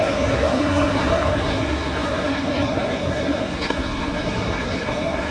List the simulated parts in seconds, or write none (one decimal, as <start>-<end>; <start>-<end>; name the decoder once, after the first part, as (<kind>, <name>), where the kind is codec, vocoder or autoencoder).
0.0-5.3 (codec, SNAC)